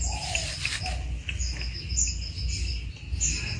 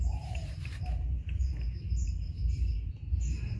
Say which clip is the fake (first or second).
second